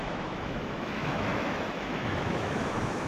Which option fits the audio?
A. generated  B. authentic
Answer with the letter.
A